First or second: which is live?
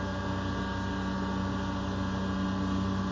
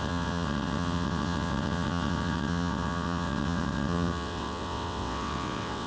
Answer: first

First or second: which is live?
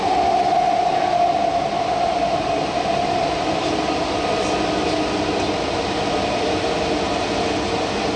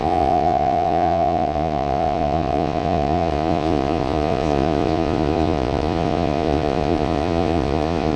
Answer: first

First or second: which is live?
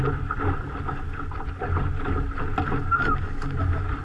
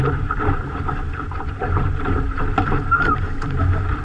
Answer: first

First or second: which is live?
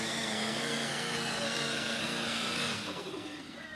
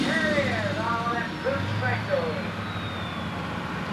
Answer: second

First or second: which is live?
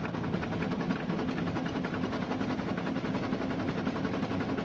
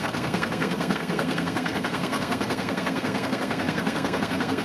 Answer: first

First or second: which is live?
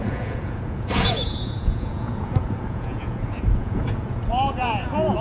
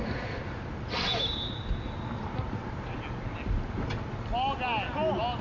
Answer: second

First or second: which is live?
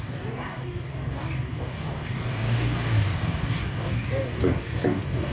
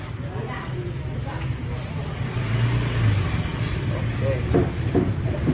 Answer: second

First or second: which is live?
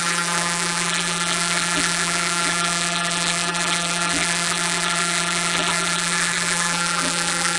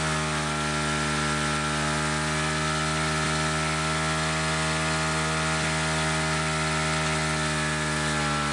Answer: second